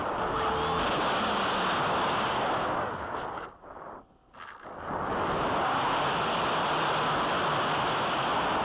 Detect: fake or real real